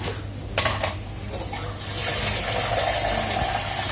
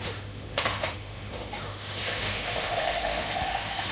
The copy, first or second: second